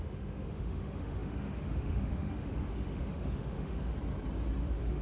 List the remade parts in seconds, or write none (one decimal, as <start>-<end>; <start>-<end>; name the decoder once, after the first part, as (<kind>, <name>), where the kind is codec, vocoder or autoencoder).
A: 0.0-3.9 (autoencoder, DAC-VAE); 4.6-5.0